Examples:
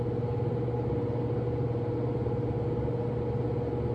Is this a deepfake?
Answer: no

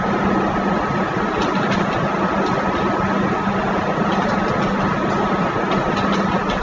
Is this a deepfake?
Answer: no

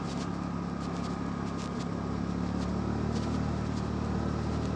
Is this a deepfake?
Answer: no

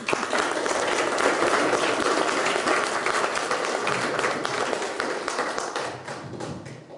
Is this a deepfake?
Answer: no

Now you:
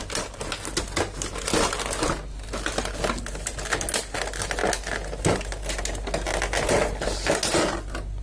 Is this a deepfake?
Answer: no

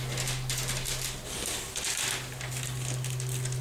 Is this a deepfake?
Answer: no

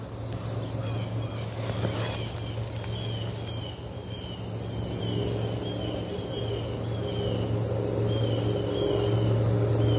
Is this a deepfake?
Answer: no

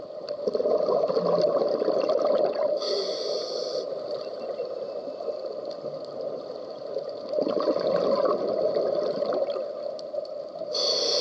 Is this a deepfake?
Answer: no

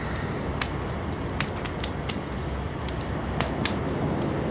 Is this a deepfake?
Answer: no